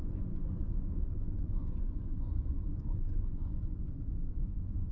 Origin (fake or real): fake